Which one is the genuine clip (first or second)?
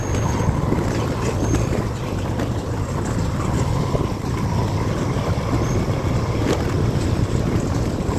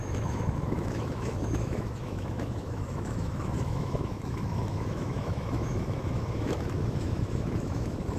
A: first